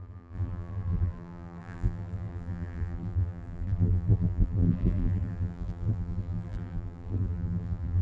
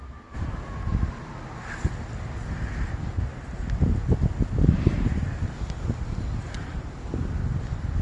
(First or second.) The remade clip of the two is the first